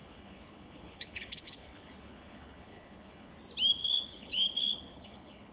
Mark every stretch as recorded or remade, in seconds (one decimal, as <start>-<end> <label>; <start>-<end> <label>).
0.0-3.3 remade; 3.3-3.8 recorded; 3.8-5.5 remade